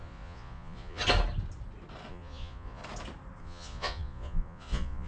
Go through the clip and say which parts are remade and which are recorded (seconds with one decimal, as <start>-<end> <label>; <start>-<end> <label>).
0.0-1.0 remade; 1.0-2.1 recorded; 2.1-2.8 remade; 2.8-3.4 recorded; 3.4-5.1 remade